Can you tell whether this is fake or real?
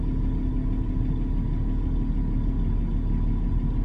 real